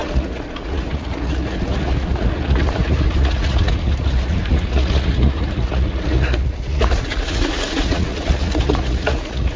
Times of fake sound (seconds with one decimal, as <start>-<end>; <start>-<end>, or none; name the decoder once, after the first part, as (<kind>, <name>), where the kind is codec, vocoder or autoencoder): 0.0-9.6 (vocoder, Vocos)